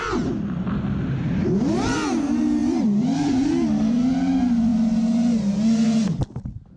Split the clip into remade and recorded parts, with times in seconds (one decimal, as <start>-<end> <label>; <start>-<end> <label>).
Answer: 0.0-2.6 recorded; 2.6-3.3 remade; 3.3-6.8 recorded